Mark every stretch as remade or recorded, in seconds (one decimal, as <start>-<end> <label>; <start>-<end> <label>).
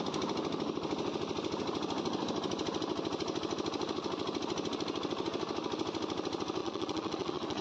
0.0-6.6 recorded; 6.6-7.6 remade